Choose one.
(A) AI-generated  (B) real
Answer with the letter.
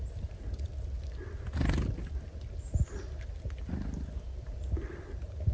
B